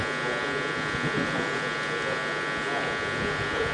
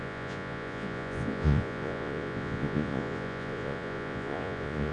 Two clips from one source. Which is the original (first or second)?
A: first